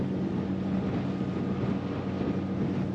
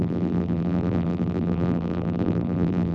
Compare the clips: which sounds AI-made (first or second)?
second